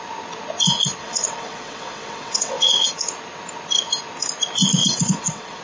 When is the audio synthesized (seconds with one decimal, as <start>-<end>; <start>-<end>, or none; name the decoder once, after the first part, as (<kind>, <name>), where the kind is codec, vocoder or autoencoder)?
1.0-2.9 (vocoder, WaveNeXt); 4.8-5.6

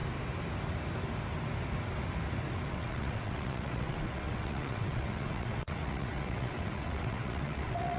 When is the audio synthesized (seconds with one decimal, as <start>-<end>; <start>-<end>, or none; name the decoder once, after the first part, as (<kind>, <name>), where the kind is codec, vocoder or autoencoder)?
2.7-8.0 (vocoder, WaveNeXt)

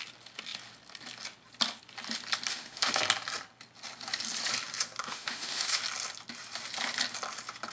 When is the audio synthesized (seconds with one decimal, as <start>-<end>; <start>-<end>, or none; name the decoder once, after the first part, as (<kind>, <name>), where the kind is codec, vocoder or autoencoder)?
2.5-3.0 (autoencoder, DAC-VAE); 5.0-5.8

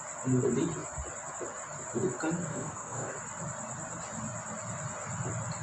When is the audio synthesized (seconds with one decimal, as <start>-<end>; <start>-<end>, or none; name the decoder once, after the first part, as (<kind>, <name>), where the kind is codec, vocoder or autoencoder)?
2.5-3.1 (codec, DAC)